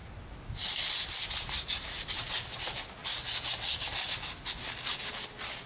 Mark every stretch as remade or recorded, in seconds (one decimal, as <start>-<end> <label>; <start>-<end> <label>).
0.0-5.7 recorded